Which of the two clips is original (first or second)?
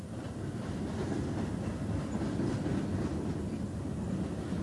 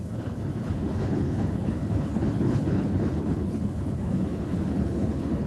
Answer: first